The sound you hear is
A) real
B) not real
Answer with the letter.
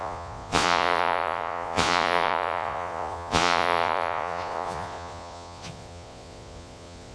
B